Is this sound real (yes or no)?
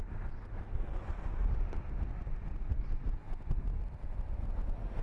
yes